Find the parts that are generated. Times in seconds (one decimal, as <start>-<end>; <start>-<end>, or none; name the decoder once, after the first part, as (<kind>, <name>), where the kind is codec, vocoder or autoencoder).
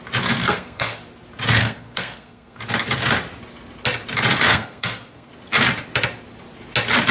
0.4-1.0 (codec, SNAC); 1.6-2.6; 4.5-5.3